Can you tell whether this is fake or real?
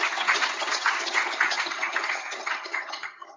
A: fake